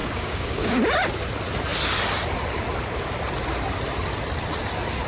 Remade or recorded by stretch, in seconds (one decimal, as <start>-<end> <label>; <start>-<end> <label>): 0.0-0.7 remade; 0.7-5.1 recorded